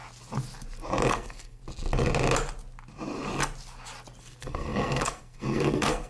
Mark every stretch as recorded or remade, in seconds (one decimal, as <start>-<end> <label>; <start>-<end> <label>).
0.0-1.1 recorded; 1.1-1.6 remade; 1.6-4.2 recorded; 4.2-6.1 remade